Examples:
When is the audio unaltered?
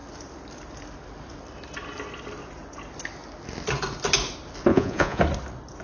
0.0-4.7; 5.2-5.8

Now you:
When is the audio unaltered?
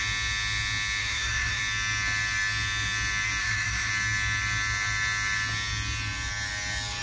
0.0-1.0; 1.6-3.4; 3.9-7.0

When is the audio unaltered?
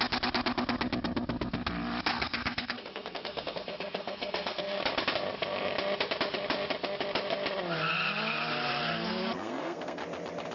0.0-2.1; 4.8-9.2; 10.0-10.5